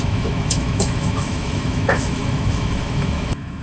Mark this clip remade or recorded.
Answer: remade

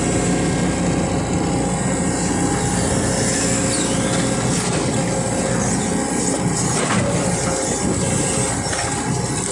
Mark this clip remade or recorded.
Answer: recorded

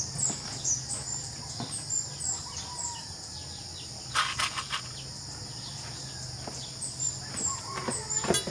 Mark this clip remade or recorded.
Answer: recorded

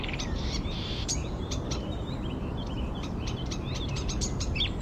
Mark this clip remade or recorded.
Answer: remade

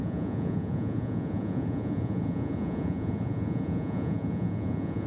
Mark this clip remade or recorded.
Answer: remade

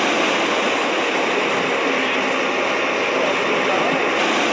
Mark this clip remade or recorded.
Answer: recorded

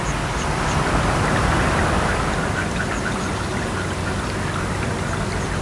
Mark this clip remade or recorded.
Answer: recorded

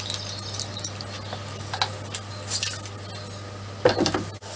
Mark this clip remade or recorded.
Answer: recorded